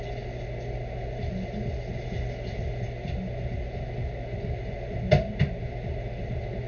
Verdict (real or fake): real